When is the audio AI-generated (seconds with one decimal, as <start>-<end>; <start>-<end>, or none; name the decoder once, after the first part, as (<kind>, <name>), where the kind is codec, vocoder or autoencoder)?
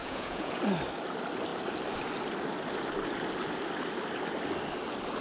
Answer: 0.0-0.6 (vocoder, Vocos)